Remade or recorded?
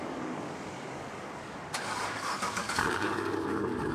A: remade